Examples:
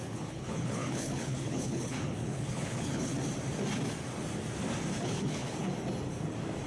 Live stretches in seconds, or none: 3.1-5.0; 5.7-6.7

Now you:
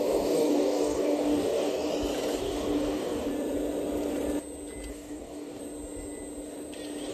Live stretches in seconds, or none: 1.9-2.4; 3.3-4.9; 5.6-7.1

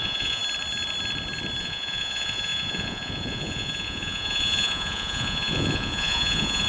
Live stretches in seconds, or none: 0.4-1.6

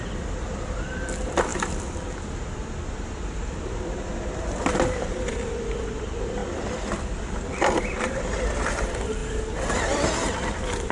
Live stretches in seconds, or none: 6.4-7.0; 9.2-9.7

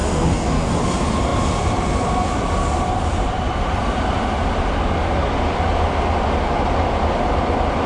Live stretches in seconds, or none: 0.7-7.9

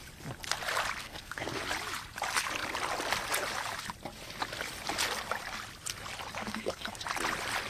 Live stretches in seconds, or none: 0.0-1.0; 1.6-6.4; 7.0-7.7

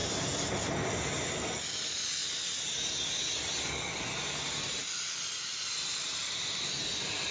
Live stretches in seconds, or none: 0.0-7.3